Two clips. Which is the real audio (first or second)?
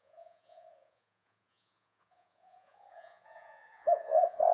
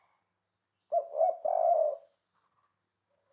second